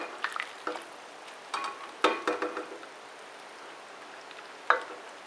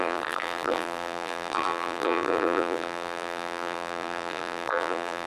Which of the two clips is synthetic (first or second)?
second